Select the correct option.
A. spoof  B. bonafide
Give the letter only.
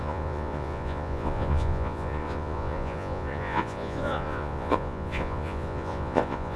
A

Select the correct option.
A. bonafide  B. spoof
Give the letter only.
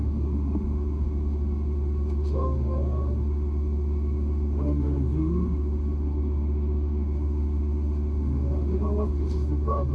B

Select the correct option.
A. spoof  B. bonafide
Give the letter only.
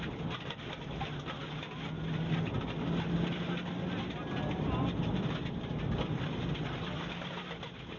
B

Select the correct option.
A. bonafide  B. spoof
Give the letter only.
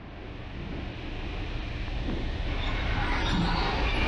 A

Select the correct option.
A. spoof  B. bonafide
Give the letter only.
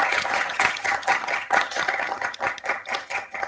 A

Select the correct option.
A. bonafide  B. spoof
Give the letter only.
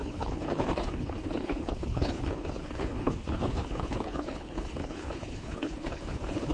B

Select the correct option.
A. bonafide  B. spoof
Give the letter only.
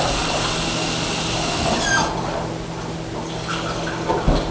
A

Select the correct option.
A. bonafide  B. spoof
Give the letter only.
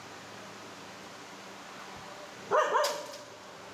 A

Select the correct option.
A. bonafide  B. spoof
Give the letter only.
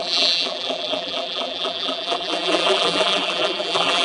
B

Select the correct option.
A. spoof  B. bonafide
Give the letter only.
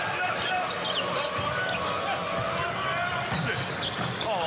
B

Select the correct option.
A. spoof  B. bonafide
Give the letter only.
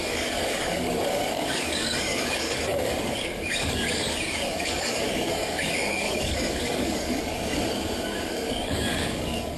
A